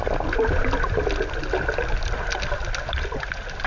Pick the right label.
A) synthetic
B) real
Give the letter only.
B